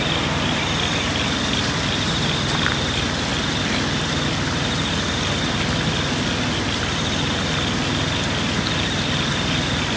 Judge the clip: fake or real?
real